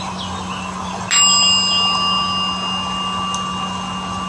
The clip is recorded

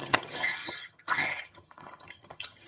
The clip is remade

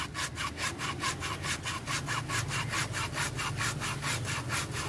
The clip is recorded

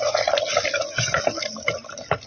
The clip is recorded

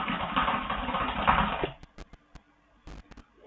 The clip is recorded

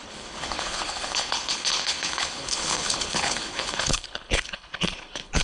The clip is remade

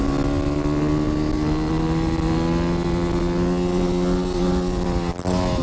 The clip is recorded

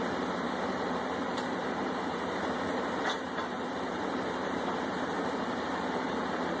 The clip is remade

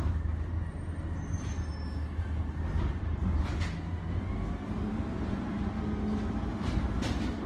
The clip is recorded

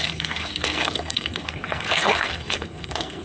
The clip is remade